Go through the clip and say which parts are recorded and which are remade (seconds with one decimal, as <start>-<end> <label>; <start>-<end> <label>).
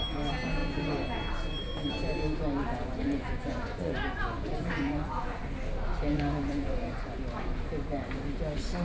0.0-2.8 recorded; 2.8-5.4 remade; 5.4-6.1 recorded; 6.1-7.2 remade; 7.2-8.8 recorded